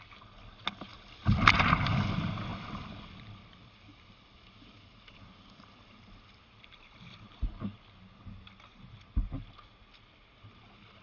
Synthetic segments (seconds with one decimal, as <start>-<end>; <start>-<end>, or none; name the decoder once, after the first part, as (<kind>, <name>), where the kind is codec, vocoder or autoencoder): 0.9-1.5 (vocoder, BigVGAN v2); 2.5-7.6